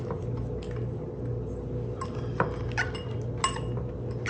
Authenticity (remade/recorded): recorded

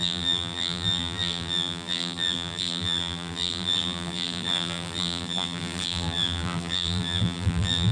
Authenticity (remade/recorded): remade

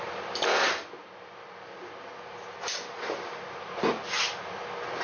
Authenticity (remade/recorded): recorded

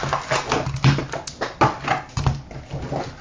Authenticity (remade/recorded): recorded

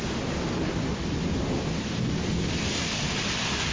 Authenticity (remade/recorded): recorded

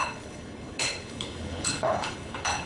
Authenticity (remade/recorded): remade